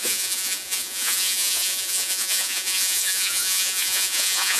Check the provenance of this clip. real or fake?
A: fake